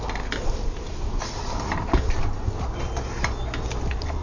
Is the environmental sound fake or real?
real